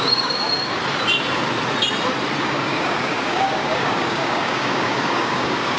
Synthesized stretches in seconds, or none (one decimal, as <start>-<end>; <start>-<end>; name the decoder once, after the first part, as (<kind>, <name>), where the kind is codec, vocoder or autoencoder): 0.0-0.8 (codec, DAC); 2.4-5.8